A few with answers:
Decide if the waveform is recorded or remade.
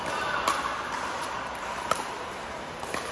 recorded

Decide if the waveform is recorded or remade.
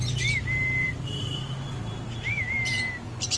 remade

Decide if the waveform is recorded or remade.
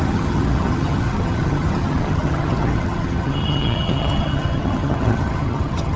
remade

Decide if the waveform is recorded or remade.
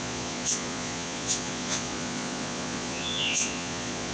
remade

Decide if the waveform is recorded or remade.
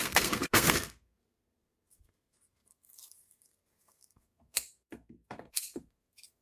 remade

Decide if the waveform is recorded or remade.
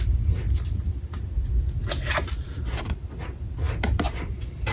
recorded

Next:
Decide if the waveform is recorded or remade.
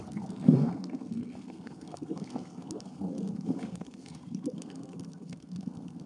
remade